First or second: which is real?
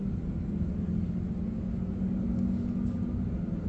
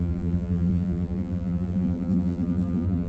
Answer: first